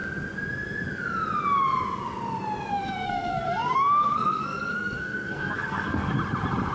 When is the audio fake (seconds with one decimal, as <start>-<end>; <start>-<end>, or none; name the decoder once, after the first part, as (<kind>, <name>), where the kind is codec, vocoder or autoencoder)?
2.7-6.1 (codec, SNAC)